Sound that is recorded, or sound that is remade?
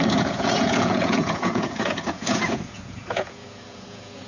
remade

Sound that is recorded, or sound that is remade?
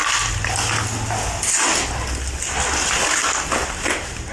recorded